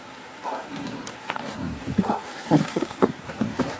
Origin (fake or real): fake